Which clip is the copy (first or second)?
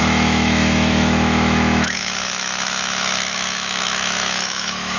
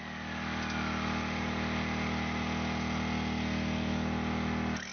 first